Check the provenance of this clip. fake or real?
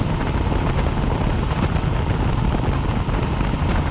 real